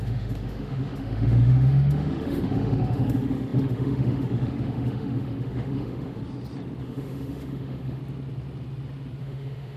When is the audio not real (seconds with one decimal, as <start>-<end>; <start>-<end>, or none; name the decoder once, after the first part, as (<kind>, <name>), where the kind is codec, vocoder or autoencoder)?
0.0-6.2 (autoencoder, DAC-VAE); 6.8-8.0; 9.2-9.8